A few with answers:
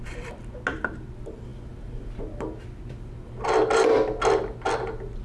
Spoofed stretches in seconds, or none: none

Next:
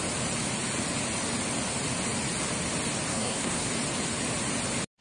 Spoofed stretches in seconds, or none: 3.1-3.7 (codec, SNAC)

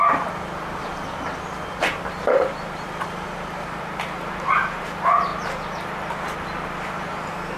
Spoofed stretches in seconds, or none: 0.0-0.8 (vocoder, BigVGAN v2); 2.0-5.3; 6.9-7.6

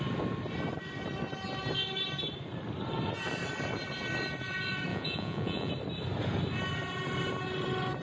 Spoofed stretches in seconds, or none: 4.9-5.7 (vocoder, Vocos)

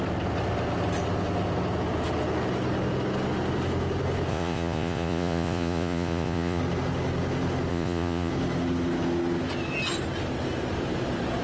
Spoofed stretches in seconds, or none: 4.3-6.6 (vocoder, Vocos); 7.7-8.3